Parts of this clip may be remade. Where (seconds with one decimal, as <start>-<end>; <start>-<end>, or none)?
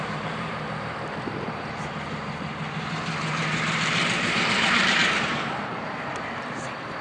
0.0-7.0